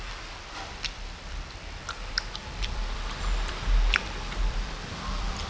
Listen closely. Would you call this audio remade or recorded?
remade